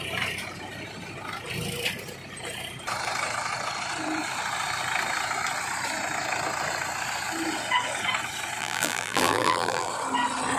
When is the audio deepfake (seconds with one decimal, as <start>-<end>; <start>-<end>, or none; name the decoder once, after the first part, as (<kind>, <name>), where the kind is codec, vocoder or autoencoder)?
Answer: 8.6-9.9 (vocoder, BigVGAN v2)

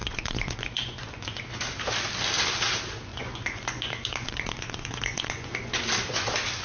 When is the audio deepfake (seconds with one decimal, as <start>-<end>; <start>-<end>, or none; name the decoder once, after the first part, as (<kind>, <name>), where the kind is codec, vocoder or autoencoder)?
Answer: 0.0-1.4 (vocoder, Vocos); 3.1-5.8

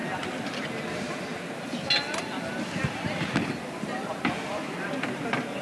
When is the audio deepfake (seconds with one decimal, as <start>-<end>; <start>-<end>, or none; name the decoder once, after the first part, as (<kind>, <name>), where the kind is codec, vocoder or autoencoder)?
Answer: none

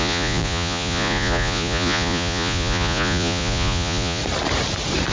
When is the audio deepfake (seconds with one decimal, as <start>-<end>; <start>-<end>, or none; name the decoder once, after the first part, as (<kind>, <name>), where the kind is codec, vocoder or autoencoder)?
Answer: 0.0-4.2 (vocoder, Vocos)

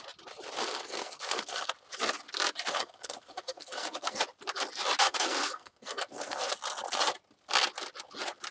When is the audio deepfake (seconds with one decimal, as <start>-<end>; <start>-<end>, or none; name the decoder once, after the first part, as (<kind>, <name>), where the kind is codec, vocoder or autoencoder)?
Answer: 0.6-1.7 (codec, SNAC); 2.7-4.2; 5.0-6.5

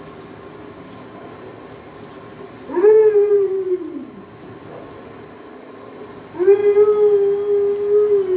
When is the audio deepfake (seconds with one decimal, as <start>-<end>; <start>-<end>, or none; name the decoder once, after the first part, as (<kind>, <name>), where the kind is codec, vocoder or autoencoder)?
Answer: 2.8-4.0 (vocoder, Vocos)